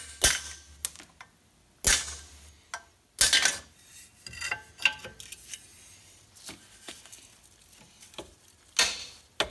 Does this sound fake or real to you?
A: real